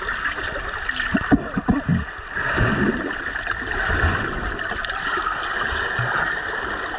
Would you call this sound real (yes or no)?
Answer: yes